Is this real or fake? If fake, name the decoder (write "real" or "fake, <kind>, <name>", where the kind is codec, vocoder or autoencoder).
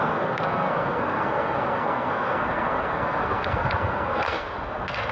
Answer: fake, codec, SNAC